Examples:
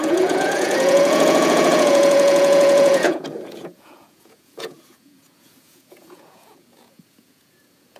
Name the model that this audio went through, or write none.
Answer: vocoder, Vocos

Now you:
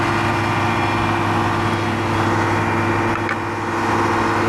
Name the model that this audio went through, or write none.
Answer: none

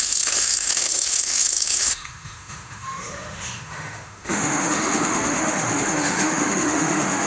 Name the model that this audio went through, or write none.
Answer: autoencoder, DAC-VAE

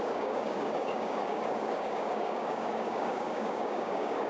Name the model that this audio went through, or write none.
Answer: codec, DAC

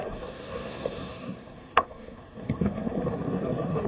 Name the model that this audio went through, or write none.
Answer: codec, SNAC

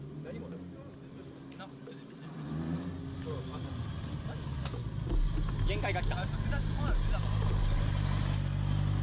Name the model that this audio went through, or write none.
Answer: none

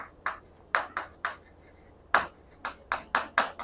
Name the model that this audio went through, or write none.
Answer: none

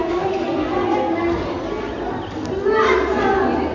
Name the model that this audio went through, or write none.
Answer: none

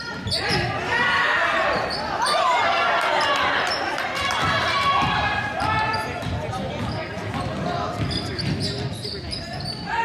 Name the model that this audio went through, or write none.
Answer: none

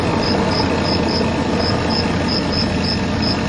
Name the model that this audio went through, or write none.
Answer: none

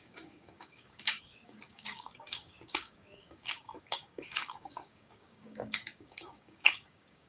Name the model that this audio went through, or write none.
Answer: codec, DAC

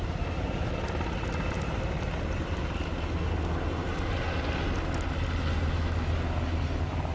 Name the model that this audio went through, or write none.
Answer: none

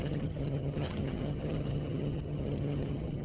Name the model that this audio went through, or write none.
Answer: vocoder, HiFi-GAN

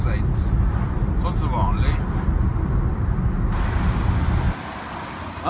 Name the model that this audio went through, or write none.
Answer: none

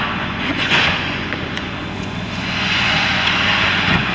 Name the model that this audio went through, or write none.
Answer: vocoder, Vocos